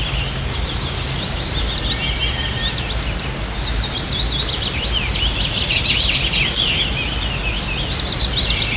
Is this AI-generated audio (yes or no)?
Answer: no